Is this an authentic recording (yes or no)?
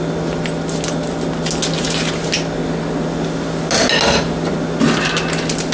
yes